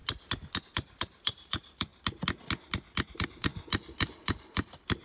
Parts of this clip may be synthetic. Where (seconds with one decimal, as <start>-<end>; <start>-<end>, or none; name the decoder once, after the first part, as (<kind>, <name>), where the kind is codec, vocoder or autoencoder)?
0.6-1.9 (vocoder, BigVGAN v2); 3.1-3.5; 4.1-5.0